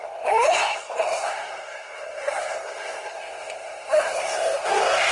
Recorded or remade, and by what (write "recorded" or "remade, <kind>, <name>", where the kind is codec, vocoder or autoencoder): remade, codec, SNAC